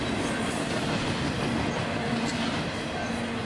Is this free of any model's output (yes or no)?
yes